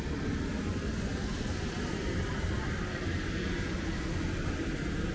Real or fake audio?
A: real